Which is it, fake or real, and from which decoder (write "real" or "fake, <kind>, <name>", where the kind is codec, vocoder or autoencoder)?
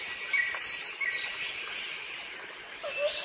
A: real